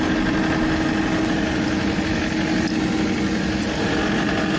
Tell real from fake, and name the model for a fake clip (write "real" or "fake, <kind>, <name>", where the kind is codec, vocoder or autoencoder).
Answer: real